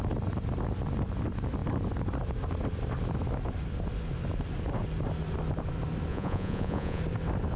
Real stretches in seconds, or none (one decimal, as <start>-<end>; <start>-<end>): 0.0-6.1; 7.0-7.6